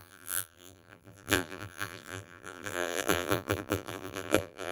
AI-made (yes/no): yes